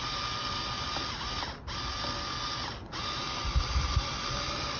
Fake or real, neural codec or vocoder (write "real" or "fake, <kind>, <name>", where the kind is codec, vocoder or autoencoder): real